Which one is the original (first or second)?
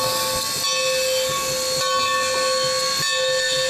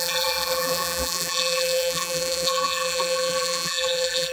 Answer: first